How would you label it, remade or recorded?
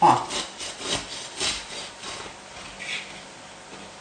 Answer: recorded